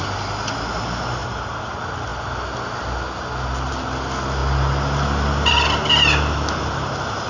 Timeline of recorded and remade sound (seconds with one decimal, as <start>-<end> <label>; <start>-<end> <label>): 0.0-7.3 recorded